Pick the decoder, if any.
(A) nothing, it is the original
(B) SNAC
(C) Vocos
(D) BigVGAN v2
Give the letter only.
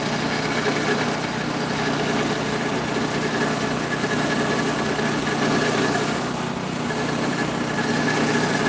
A